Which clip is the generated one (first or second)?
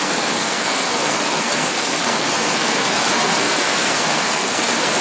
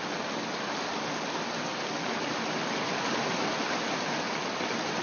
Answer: first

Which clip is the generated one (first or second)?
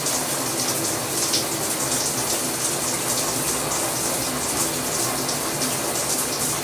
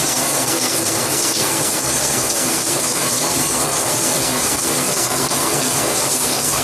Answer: second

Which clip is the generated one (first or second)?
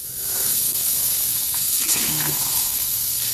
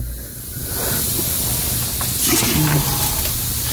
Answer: first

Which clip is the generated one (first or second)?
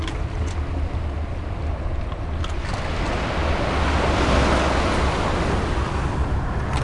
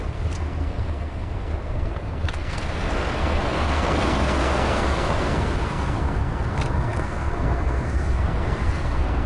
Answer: second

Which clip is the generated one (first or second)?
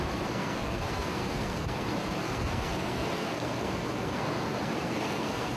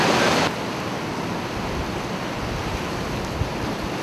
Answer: first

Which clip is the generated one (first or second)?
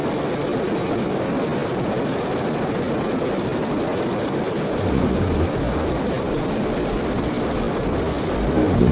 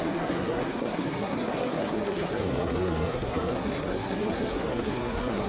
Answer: second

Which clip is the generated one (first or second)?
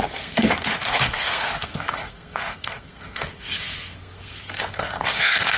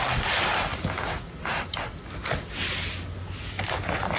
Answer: first